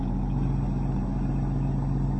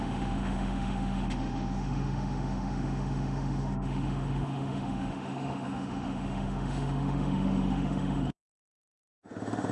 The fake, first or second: second